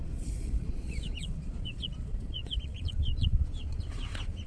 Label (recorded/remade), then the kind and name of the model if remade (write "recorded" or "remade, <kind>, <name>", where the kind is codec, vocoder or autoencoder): remade, vocoder, Vocos